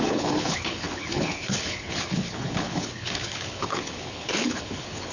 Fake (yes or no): yes